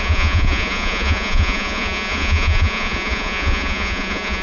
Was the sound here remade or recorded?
remade